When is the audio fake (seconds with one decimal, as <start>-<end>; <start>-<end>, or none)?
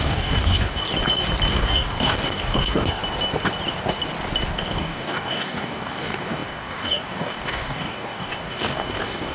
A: 0.0-0.8; 1.5-3.0; 4.5-9.3